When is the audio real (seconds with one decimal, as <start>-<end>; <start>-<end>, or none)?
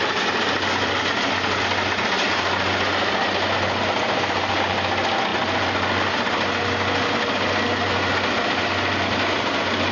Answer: 0.0-9.9